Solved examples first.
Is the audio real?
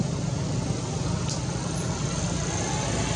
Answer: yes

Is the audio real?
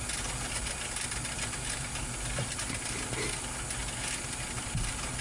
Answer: yes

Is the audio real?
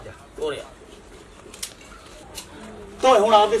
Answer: yes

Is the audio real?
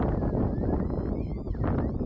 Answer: yes